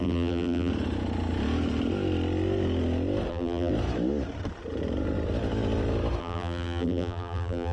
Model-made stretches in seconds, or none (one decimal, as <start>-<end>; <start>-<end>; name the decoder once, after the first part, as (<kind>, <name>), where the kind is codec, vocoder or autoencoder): 0.0-0.7 (vocoder, BigVGAN v2); 3.3-3.7; 6.2-7.7